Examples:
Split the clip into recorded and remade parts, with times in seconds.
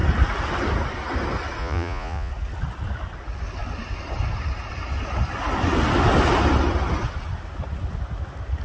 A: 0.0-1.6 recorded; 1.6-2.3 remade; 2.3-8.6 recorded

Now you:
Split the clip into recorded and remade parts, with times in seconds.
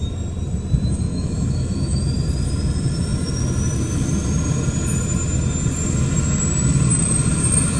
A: 0.0-1.1 recorded; 1.1-2.0 remade; 2.0-7.8 recorded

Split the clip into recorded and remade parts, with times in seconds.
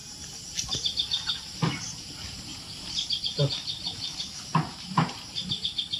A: 0.0-6.0 recorded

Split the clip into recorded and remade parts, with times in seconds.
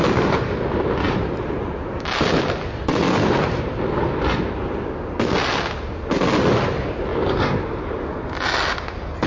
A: 0.0-9.3 recorded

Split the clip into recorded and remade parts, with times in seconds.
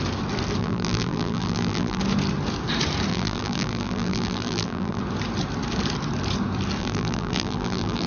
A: 0.0-0.6 recorded; 0.6-2.0 remade; 2.0-3.1 recorded; 3.1-5.0 remade; 5.0-6.8 recorded; 6.8-8.1 remade